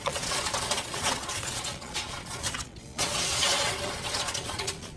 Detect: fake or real fake